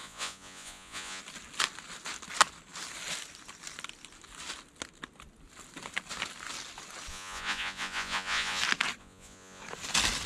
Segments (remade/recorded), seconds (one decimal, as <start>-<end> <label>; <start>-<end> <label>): 0.0-1.2 remade; 1.2-7.1 recorded; 7.1-8.6 remade; 8.6-9.0 recorded; 9.0-9.6 remade; 9.6-10.3 recorded